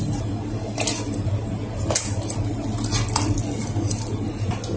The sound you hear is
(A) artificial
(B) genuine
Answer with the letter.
B